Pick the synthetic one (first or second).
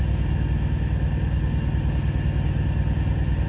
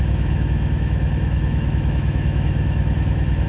second